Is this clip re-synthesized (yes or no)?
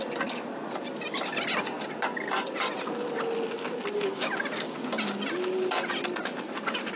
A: no